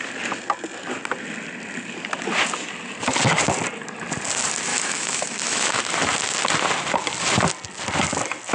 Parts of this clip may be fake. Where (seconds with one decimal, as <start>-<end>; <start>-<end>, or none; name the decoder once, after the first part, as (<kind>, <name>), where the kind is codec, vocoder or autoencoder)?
4.7-5.8 (autoencoder, DAC-VAE)